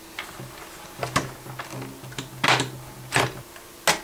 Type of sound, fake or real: real